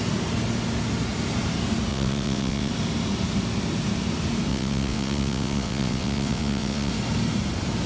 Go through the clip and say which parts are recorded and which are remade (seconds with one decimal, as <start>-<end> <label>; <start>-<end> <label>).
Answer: 0.0-1.9 recorded; 1.9-2.7 remade; 2.7-4.5 recorded; 4.5-6.9 remade; 6.9-7.9 recorded